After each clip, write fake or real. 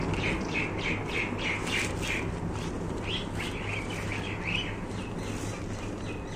real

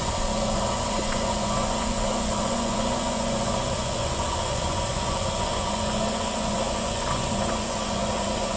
fake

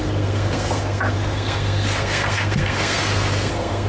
fake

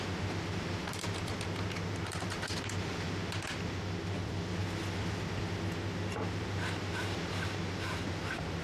real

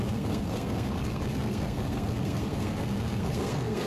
fake